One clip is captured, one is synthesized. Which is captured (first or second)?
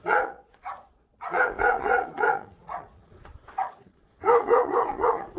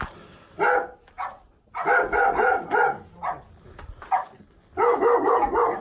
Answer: second